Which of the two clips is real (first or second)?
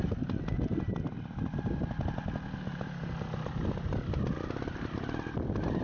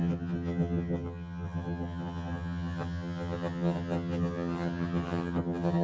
first